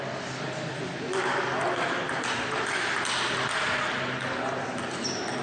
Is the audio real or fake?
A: real